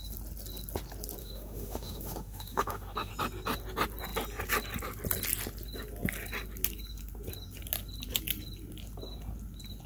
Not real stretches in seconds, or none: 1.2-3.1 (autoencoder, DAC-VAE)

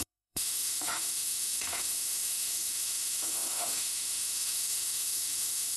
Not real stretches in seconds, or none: 0.0-5.8 (autoencoder, DAC-VAE)

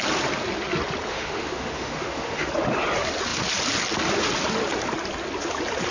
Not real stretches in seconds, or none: 1.1-2.5 (autoencoder, DAC-VAE)

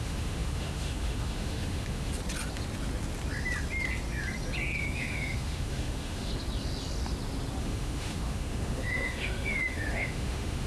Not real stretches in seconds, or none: 0.0-2.1 (autoencoder, DAC-VAE); 4.8-6.3; 7.6-10.7

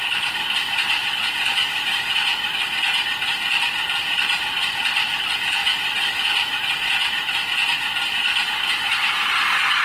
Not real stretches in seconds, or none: none

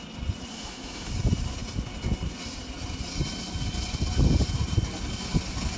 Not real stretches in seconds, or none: 0.5-1.1 (autoencoder, DAC-VAE)